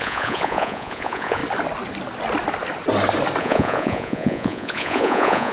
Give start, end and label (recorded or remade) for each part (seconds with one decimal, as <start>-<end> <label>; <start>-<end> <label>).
0.0-1.4 remade; 1.4-3.4 recorded; 3.4-5.5 remade